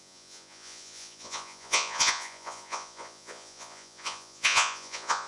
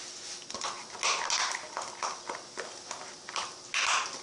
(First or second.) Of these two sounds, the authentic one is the second